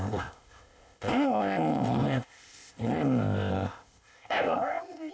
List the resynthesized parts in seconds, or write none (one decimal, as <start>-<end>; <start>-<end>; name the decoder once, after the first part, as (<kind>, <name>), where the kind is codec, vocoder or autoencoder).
0.0-5.1 (codec, ZipCodec)